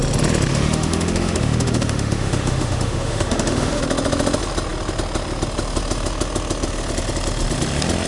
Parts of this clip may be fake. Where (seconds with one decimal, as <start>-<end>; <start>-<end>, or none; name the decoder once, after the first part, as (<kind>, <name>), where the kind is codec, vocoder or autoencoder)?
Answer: 0.5-3.8 (autoencoder, DAC-VAE)